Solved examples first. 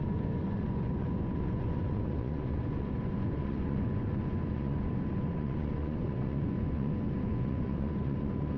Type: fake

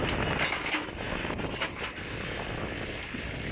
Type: real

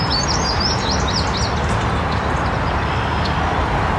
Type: real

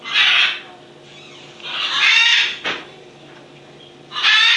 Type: real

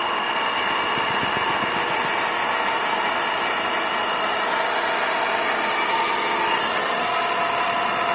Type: real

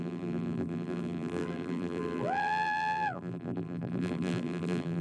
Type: fake